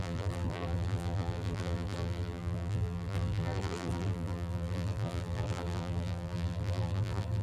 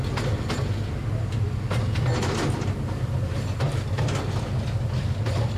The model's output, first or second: first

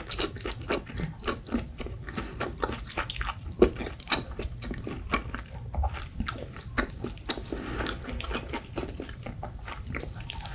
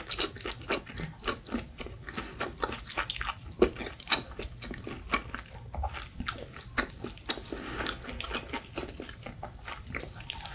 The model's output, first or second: first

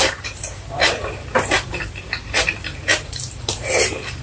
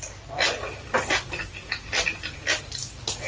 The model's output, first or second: first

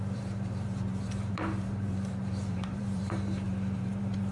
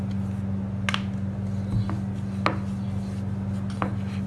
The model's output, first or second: first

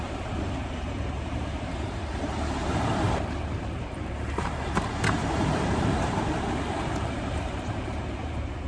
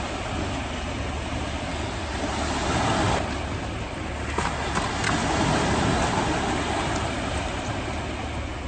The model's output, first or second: first